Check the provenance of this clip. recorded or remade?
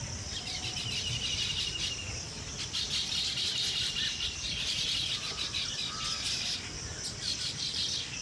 recorded